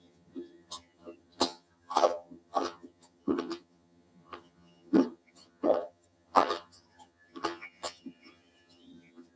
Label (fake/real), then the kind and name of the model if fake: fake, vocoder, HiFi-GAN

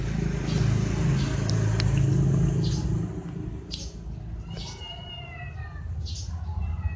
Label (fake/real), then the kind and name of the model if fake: real